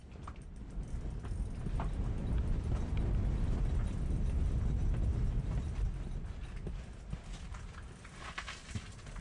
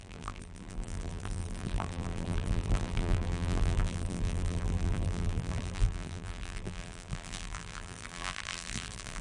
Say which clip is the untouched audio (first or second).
first